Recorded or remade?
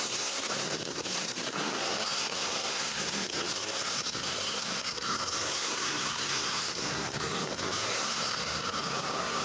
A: remade